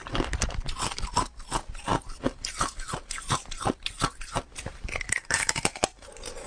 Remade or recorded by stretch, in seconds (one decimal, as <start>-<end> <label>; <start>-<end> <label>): 0.0-5.2 recorded; 5.2-6.5 remade